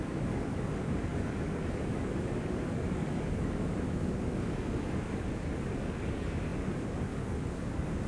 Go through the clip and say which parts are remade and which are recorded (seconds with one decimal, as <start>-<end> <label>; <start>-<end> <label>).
0.0-8.1 remade